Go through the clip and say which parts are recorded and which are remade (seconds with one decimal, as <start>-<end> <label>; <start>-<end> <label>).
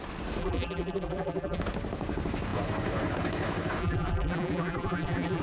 0.0-0.4 recorded; 0.4-1.6 remade; 1.6-3.8 recorded; 3.8-5.4 remade